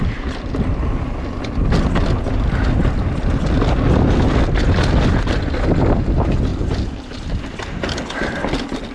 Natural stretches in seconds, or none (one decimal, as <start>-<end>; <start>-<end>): 0.0-8.9